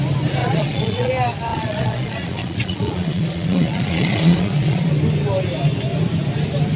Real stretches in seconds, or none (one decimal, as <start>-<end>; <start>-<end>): 0.0-0.4; 1.1-1.5; 4.9-6.8